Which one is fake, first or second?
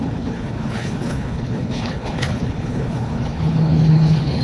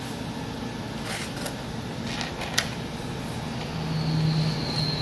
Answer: first